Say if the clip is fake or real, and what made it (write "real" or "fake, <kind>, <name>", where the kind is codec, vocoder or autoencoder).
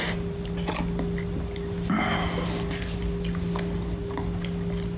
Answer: real